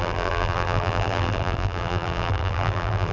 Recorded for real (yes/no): no